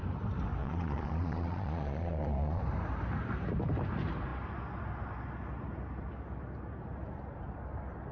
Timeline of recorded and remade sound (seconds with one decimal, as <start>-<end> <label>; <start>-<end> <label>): 0.0-0.6 recorded; 0.6-2.6 remade; 2.6-8.1 recorded